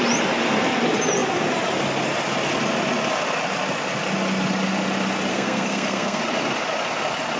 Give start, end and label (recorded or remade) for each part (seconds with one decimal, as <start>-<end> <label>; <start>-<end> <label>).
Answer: 0.0-5.3 recorded; 5.3-6.2 remade; 6.2-7.4 recorded